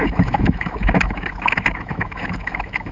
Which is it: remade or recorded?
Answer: remade